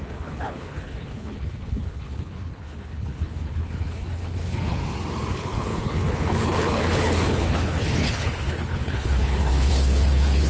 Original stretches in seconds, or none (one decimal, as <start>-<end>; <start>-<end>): 4.8-5.3